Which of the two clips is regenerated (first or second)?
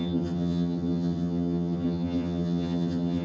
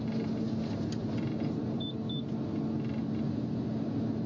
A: first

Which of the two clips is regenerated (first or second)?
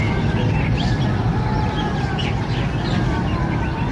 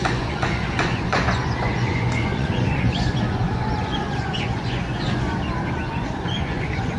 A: second